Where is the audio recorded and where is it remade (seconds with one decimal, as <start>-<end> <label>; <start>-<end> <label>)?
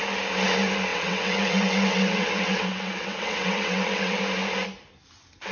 0.0-0.9 recorded; 0.9-4.2 remade; 4.2-5.5 recorded